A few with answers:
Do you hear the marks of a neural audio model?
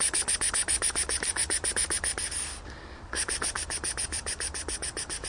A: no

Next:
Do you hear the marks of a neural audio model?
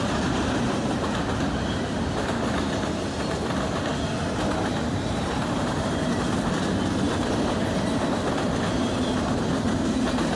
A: no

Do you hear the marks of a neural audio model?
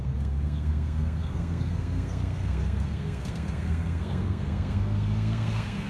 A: yes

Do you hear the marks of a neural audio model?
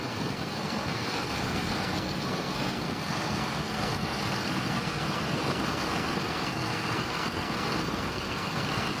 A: yes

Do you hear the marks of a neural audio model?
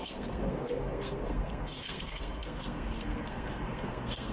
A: yes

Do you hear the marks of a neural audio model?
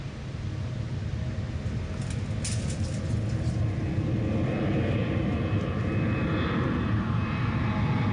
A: no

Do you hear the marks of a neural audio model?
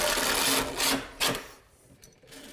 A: no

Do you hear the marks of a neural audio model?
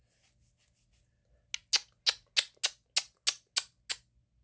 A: no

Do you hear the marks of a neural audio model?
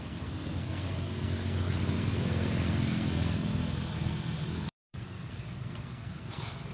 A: yes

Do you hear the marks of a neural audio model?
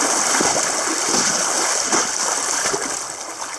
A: no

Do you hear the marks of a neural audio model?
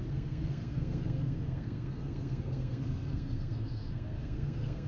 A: yes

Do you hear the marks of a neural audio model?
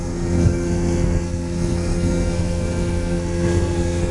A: yes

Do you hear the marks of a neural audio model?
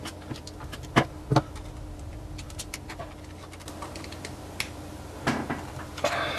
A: no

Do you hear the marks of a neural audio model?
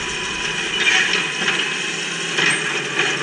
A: no